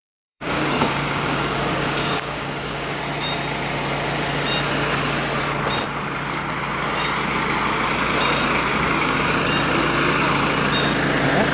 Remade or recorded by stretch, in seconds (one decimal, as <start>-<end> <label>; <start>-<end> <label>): 0.0-3.0 remade; 3.0-8.7 recorded; 8.7-9.3 remade; 9.3-11.5 recorded